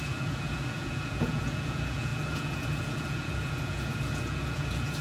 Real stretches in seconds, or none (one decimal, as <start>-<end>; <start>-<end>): none